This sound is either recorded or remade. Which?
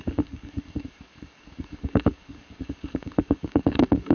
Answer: remade